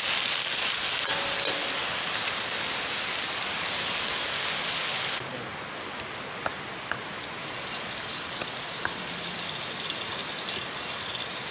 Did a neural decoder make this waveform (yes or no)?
no